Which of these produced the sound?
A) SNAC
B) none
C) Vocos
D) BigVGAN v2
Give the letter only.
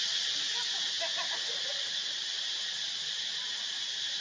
B